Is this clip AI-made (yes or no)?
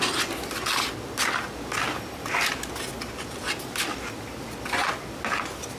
no